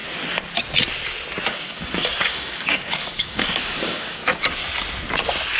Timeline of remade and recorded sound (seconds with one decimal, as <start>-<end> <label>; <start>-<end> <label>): 0.0-1.5 recorded; 1.5-4.2 remade; 4.2-5.6 recorded